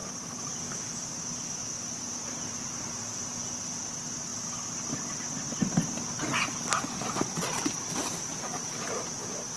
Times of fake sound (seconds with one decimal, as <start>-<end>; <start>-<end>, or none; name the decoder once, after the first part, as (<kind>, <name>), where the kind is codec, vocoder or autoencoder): 2.1-2.7 (vocoder, BigVGAN v2); 8.3-9.1